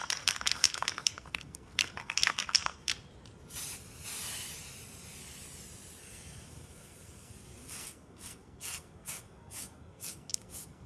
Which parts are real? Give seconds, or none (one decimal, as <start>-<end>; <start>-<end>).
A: 2.9-6.0